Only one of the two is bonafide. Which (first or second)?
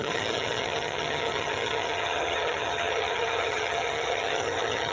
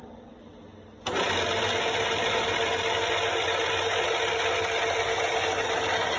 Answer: second